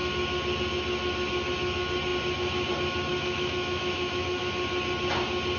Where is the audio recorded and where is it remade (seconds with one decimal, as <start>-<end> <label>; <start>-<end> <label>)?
0.0-3.1 recorded; 3.1-4.4 remade; 4.4-5.6 recorded